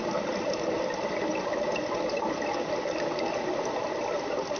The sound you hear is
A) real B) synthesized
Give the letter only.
A